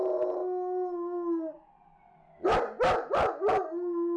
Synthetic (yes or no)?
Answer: no